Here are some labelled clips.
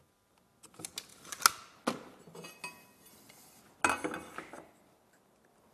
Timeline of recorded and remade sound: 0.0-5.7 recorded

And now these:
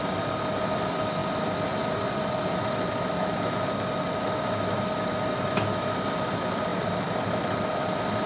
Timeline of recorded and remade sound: 0.0-1.2 recorded; 1.2-3.1 remade; 3.1-6.7 recorded; 6.7-7.7 remade; 7.7-8.3 recorded

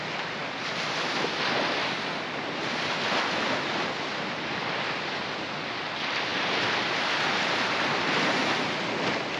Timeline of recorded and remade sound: 0.0-0.4 recorded; 0.4-2.6 remade; 2.6-6.3 recorded; 6.3-8.5 remade; 8.5-9.4 recorded

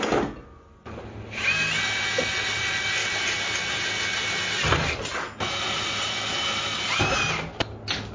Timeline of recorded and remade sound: 0.0-8.1 recorded

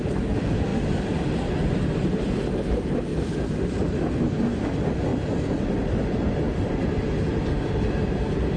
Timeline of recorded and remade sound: 0.0-8.6 recorded

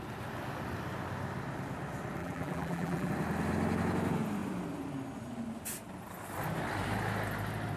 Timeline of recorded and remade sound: 0.0-2.2 recorded; 2.2-3.1 remade; 3.1-7.8 recorded

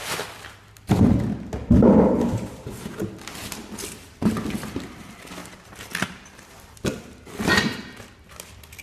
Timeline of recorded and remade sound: 0.0-5.4 recorded; 5.4-6.9 remade; 6.9-8.8 recorded